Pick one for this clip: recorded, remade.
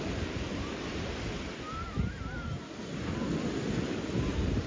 recorded